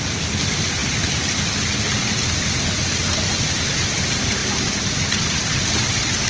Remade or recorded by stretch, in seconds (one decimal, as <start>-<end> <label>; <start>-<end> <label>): 0.0-6.3 recorded